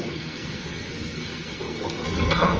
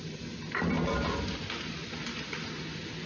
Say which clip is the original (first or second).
second